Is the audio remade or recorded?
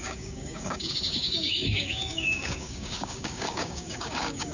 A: remade